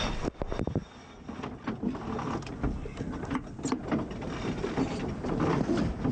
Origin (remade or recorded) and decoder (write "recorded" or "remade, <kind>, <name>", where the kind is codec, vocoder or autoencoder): recorded